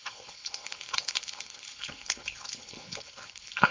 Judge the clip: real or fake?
fake